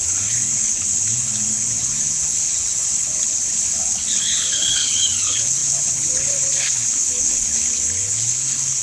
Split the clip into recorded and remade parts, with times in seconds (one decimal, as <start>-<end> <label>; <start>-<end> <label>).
0.0-8.8 remade